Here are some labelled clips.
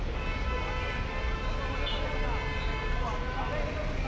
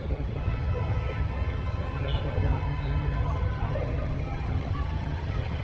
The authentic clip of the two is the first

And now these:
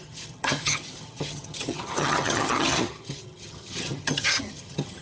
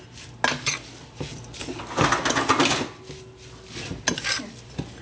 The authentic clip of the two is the second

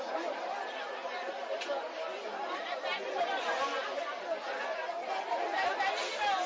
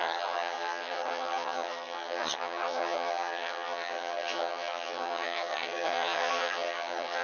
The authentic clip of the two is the first